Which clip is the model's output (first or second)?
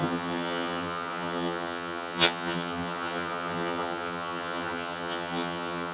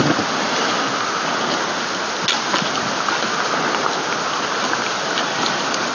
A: first